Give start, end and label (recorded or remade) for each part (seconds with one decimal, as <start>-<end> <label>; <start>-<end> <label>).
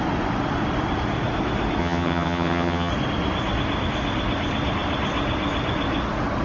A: 0.0-1.8 recorded; 1.8-2.9 remade; 2.9-6.4 recorded